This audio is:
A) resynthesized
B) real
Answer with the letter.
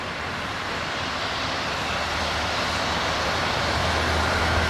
A